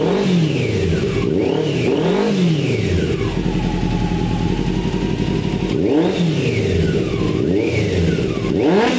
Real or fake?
real